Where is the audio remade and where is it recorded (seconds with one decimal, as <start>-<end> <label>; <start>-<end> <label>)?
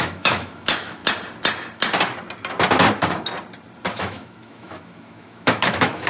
0.0-1.0 remade; 1.0-3.9 recorded; 3.9-6.1 remade